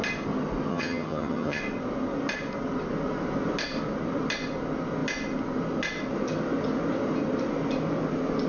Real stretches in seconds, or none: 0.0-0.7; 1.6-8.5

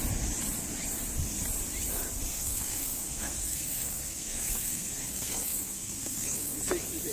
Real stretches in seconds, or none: 0.0-2.3; 6.6-7.1

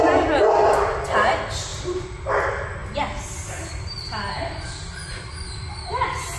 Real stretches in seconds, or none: 0.0-1.7; 2.3-6.4

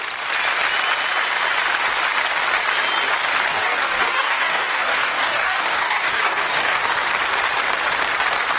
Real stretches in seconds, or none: 0.0-3.5; 6.8-8.6